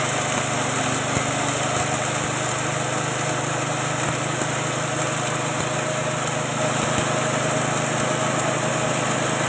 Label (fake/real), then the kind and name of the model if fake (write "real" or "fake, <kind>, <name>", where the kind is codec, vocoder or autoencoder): real